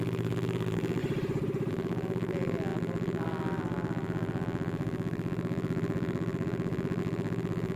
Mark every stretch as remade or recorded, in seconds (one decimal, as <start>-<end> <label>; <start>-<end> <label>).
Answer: 0.0-1.0 remade; 1.0-1.7 recorded; 1.7-7.8 remade